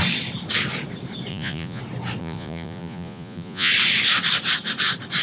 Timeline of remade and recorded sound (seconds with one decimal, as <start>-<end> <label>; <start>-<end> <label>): 0.0-1.3 recorded; 1.3-1.8 remade; 1.8-2.2 recorded; 2.2-3.7 remade; 3.7-5.2 recorded

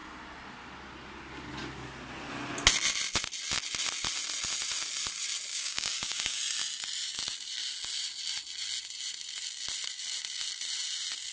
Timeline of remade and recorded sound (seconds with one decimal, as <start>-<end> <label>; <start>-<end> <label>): 0.0-5.5 recorded; 5.5-6.4 remade; 6.4-11.3 recorded

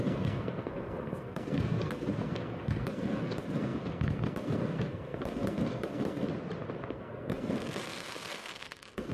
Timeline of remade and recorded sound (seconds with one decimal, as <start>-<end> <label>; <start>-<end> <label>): 0.0-6.3 remade; 6.3-6.9 recorded; 6.9-9.1 remade

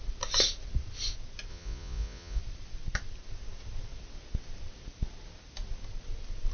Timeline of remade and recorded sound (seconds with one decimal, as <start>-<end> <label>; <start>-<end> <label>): 0.0-1.5 recorded; 1.5-2.4 remade; 2.4-6.5 recorded